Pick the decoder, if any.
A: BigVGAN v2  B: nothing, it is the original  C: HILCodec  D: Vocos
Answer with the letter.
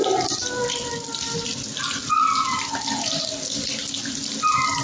B